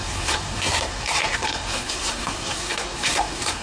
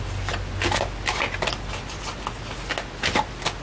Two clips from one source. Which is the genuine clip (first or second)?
second